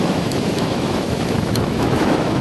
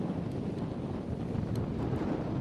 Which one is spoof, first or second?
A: first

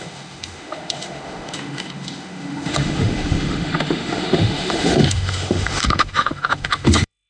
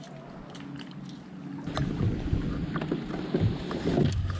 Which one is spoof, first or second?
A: first